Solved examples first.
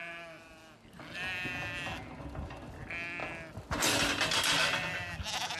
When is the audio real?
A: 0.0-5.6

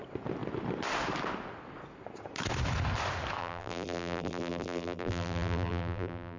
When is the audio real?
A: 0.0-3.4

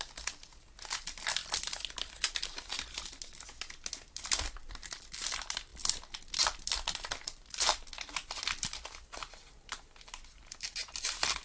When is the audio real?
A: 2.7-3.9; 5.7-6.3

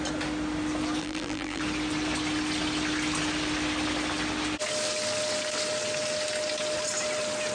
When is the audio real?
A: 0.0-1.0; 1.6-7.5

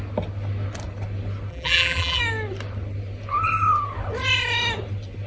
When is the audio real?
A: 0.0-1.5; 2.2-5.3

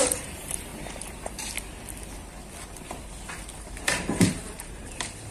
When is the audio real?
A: 0.7-3.8

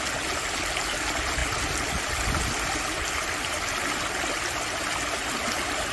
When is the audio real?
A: 0.0-5.9